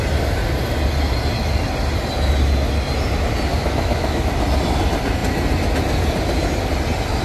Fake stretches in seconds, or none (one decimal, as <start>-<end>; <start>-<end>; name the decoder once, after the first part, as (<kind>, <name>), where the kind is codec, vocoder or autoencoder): 3.5-4.3 (autoencoder, DAC-VAE)